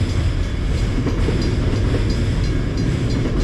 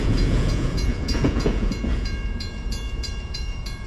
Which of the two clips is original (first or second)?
first